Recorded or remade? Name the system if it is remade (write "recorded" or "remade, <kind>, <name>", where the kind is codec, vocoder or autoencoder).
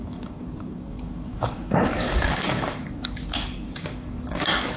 remade, codec, DAC